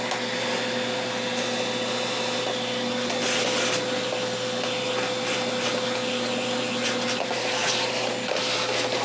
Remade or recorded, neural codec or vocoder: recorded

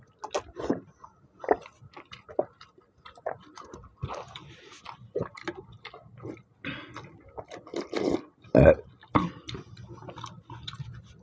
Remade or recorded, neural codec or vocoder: recorded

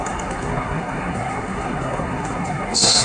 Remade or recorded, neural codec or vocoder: remade, codec, SNAC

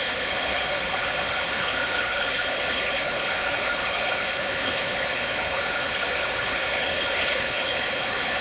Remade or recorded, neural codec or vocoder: remade, codec, HILCodec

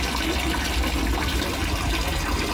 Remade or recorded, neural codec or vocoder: recorded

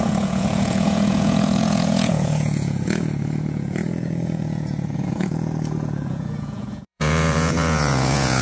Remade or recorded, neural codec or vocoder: remade, vocoder, Vocos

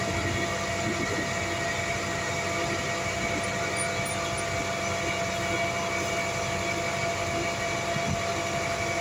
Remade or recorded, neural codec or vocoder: recorded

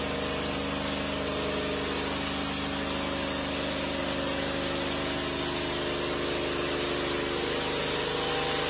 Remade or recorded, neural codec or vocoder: recorded